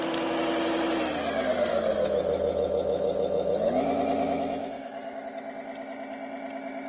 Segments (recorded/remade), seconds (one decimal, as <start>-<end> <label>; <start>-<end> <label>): 0.0-1.7 recorded; 1.7-5.2 remade; 5.2-6.9 recorded